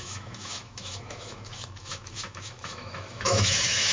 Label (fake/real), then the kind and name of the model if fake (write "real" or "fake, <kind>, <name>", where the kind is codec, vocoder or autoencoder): fake, autoencoder, DAC-VAE